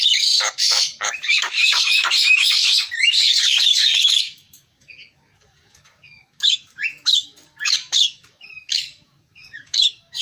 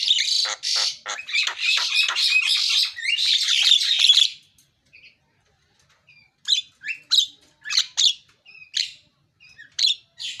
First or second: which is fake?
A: first